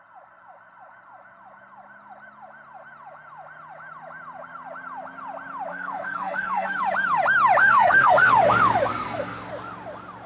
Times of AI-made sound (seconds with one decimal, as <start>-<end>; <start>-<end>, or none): 5.7-6.8; 7.6-8.3; 8.9-9.5

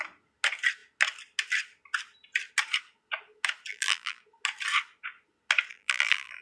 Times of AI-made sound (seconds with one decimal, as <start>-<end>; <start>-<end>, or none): 3.7-4.2; 5.7-6.4

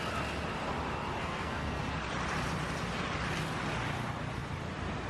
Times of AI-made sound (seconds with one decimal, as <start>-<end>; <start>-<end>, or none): 1.2-1.8